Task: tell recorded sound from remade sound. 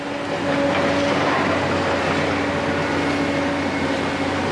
recorded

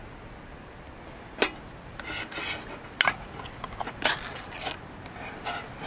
recorded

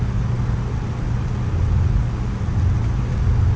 recorded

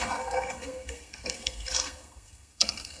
remade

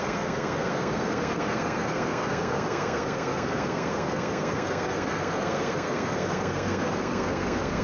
remade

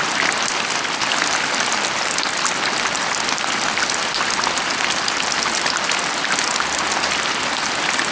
recorded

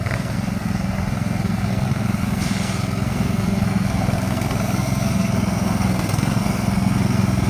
remade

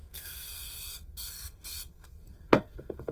remade